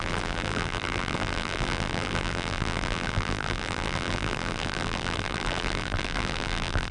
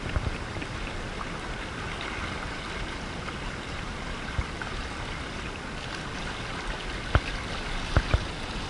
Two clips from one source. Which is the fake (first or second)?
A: first